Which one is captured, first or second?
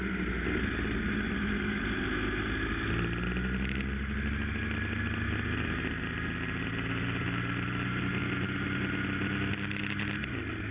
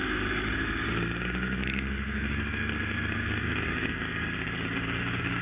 first